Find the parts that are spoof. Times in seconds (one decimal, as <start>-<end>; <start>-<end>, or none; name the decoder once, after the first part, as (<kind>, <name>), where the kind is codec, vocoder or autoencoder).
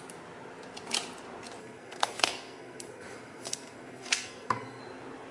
1.6-4.8 (codec, SNAC)